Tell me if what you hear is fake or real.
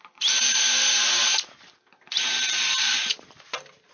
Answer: fake